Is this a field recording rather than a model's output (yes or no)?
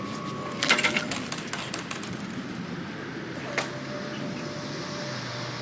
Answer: yes